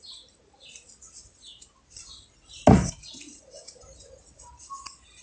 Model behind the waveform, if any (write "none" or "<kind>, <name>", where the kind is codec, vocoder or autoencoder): none